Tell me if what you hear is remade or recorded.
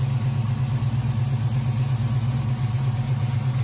recorded